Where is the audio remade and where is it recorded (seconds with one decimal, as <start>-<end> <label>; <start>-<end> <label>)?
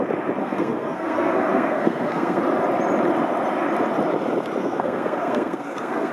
0.0-0.4 recorded; 0.4-2.4 remade; 2.4-4.6 recorded; 4.6-6.1 remade